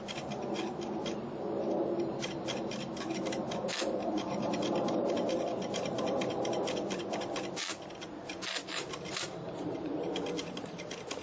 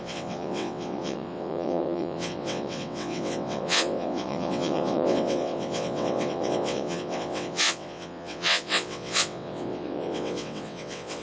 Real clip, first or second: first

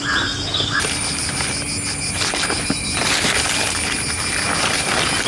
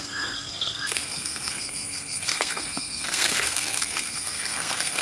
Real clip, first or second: first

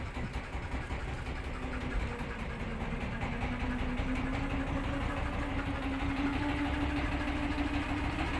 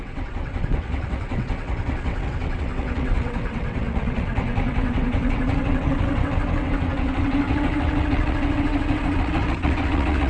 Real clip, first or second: first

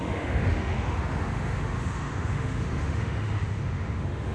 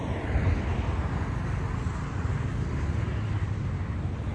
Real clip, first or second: second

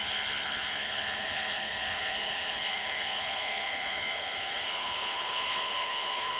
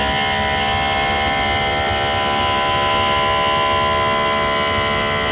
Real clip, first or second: second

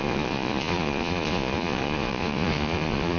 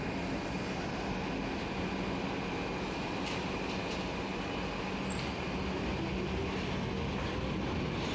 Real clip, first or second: second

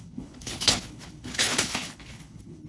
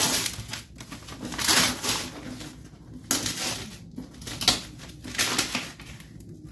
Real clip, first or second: second